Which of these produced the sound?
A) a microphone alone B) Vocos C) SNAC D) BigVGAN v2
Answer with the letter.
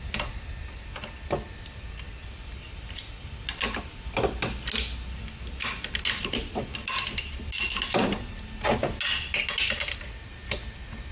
A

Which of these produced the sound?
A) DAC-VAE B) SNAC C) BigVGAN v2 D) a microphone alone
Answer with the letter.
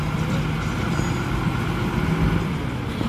D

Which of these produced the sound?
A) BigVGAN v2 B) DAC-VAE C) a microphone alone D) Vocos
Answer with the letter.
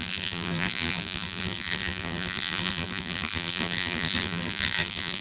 A